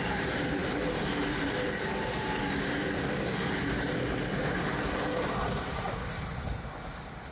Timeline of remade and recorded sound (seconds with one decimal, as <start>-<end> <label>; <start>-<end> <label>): 0.0-7.3 recorded